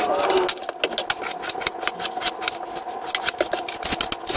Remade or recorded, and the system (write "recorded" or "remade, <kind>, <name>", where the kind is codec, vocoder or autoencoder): recorded